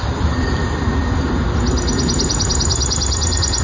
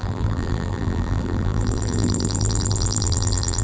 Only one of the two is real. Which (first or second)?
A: first